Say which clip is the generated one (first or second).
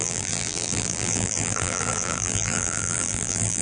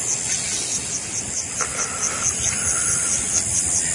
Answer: first